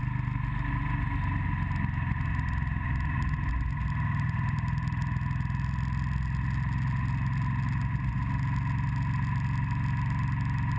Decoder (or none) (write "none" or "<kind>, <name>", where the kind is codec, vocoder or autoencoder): none